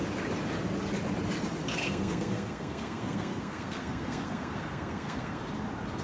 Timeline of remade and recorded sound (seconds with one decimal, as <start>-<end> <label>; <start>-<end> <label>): 0.0-1.8 recorded; 1.8-5.4 remade; 5.4-6.0 recorded